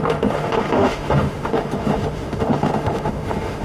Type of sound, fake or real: fake